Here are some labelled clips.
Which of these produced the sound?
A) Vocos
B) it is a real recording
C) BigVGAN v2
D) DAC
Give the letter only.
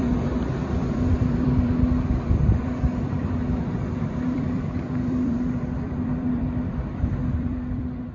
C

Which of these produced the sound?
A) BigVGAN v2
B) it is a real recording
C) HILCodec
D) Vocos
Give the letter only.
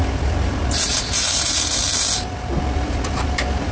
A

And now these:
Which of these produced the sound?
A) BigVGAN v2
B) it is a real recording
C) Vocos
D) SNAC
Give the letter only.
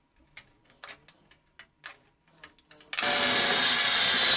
B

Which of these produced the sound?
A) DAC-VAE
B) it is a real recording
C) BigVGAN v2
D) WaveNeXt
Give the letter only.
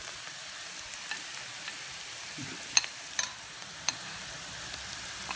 C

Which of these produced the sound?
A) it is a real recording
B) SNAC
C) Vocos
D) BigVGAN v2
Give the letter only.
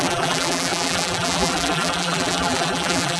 D